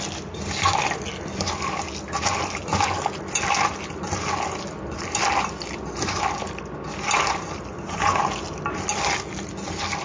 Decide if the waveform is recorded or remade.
recorded